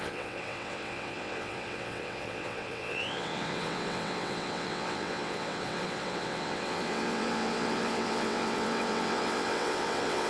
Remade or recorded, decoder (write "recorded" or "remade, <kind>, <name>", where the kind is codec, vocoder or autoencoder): remade, vocoder, WaveNeXt